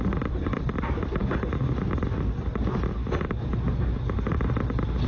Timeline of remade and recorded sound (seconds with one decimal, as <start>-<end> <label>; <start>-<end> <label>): 0.0-5.1 recorded